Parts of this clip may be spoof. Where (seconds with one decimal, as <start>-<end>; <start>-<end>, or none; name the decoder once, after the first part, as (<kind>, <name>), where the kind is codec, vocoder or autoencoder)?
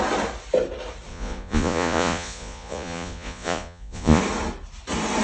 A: 1.1-4.2 (vocoder, Vocos)